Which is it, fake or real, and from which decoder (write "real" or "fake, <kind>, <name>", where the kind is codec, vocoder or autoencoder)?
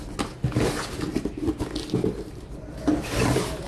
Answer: real